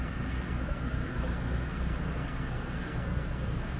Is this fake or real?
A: fake